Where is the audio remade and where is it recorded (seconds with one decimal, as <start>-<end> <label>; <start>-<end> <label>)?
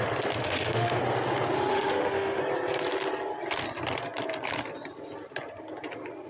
0.0-0.4 recorded; 0.4-1.0 remade; 1.0-1.7 recorded; 1.7-2.4 remade; 2.4-6.3 recorded